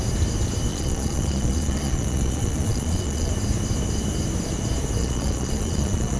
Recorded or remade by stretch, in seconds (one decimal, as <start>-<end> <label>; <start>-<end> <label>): 0.0-0.7 recorded; 0.7-3.3 remade; 3.3-5.0 recorded; 5.0-6.2 remade